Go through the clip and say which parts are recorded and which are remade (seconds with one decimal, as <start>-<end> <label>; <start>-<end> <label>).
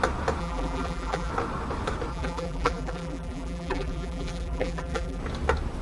0.0-0.4 recorded; 0.4-1.3 remade; 1.3-2.1 recorded; 2.1-5.2 remade; 5.2-5.8 recorded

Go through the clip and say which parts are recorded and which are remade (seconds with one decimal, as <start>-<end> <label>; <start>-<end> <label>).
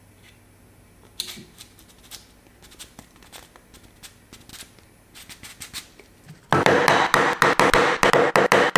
0.0-8.8 recorded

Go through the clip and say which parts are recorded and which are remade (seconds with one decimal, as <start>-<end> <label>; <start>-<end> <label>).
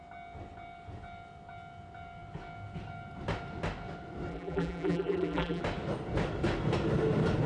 0.0-4.3 recorded; 4.3-5.6 remade; 5.6-7.5 recorded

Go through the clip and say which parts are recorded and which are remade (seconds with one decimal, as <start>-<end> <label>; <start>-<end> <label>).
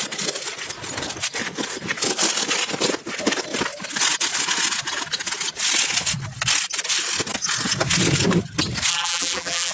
0.0-8.9 recorded; 8.9-9.7 remade